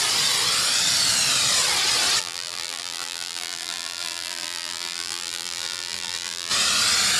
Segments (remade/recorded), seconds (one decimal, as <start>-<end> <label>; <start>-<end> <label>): 0.0-2.2 recorded; 2.2-6.5 remade; 6.5-7.2 recorded

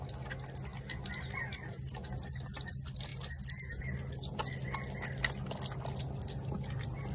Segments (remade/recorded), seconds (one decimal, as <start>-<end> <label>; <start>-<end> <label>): 0.0-7.1 recorded

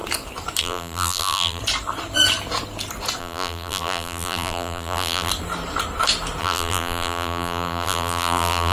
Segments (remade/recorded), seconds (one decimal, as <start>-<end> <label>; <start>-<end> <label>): 0.0-0.6 recorded; 0.6-1.6 remade; 1.6-3.2 recorded; 3.2-5.3 remade; 5.3-6.4 recorded; 6.4-8.7 remade

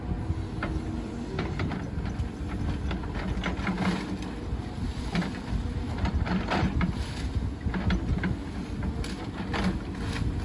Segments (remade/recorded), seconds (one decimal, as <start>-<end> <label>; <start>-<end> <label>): 0.0-4.9 recorded; 4.9-7.4 remade; 7.4-10.4 recorded

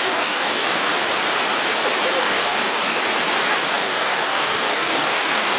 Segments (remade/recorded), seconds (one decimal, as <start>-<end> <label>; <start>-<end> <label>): 0.0-0.9 remade; 0.9-2.2 recorded; 2.2-3.0 remade; 3.0-3.7 recorded; 3.7-5.6 remade

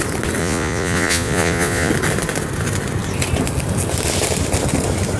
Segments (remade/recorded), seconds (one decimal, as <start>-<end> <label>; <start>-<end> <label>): 0.0-0.4 recorded; 0.4-1.9 remade; 1.9-5.2 recorded

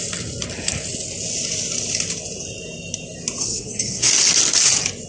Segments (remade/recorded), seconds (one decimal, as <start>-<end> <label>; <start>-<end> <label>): 0.0-3.4 recorded; 3.4-4.1 remade; 4.1-5.1 recorded